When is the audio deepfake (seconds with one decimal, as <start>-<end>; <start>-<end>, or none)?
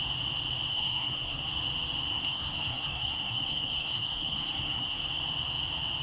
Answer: 0.7-1.5; 2.1-5.1